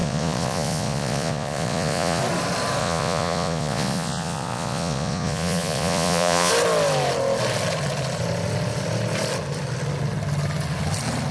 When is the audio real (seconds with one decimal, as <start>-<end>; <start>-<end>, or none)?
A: 2.2-2.8; 6.5-11.3